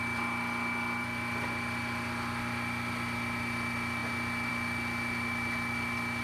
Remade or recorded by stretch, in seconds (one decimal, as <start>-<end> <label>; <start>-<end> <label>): 0.0-6.2 recorded